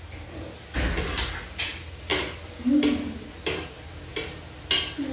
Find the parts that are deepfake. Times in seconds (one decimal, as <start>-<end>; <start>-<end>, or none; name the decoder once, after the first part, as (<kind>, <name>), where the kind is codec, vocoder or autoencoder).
none